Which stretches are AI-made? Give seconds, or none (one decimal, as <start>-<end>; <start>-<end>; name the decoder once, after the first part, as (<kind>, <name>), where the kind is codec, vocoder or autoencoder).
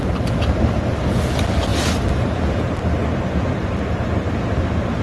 none